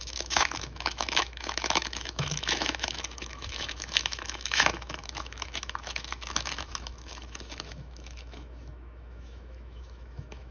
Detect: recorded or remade remade